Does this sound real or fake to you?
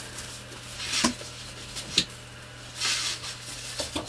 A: real